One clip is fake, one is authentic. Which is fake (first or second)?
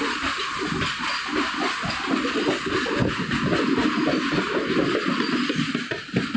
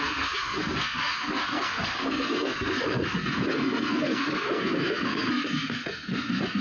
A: second